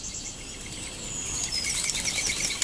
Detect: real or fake real